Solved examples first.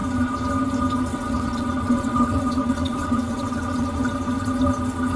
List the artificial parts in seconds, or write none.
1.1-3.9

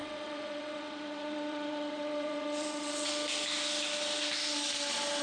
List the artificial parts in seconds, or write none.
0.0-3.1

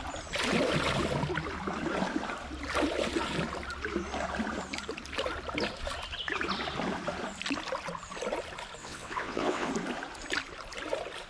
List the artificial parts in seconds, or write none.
8.8-9.7

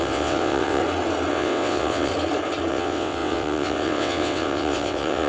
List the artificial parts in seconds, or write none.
0.0-0.8; 1.3-2.1; 2.7-5.3

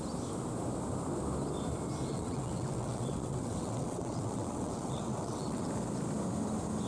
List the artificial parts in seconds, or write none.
2.1-5.7

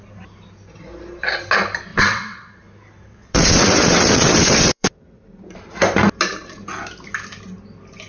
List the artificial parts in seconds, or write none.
1.9-2.5; 3.2-5.2